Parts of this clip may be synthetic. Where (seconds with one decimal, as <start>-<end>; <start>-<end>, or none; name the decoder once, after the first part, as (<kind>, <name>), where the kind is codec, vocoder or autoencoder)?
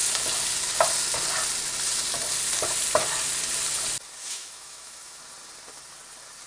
4.2-5.2 (autoencoder, DAC-VAE)